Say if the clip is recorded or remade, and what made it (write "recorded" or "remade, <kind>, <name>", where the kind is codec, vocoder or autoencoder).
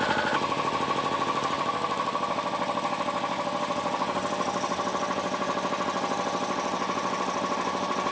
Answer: recorded